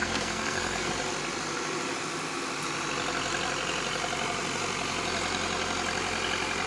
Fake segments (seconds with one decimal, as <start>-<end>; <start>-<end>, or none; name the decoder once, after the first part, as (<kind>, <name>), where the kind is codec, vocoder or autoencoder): 0.0-0.9 (codec, SNAC)